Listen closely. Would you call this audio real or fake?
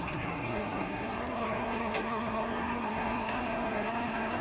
fake